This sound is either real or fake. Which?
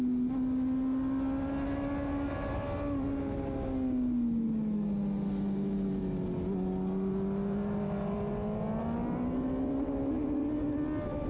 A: real